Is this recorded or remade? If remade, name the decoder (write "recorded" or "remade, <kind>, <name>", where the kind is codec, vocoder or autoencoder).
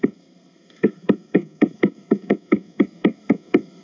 remade, codec, SNAC